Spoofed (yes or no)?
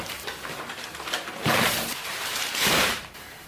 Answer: yes